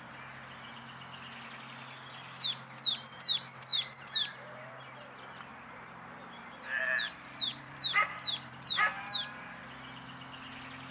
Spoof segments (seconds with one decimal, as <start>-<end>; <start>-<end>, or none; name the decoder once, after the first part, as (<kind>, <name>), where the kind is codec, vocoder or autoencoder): 3.7-4.9 (vocoder, BigVGAN v2); 5.5-6.8; 7.5-9.6